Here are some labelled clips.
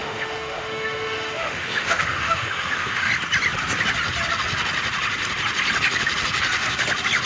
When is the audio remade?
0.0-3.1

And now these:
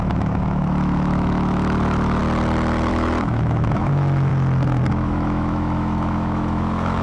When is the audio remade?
0.0-2.2; 2.9-4.3; 4.9-7.0

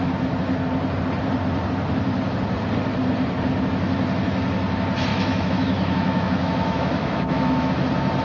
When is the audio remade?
5.1-7.7

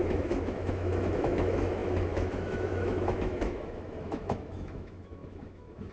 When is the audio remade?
0.0-5.9

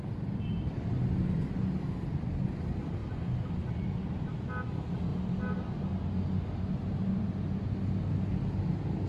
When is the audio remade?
none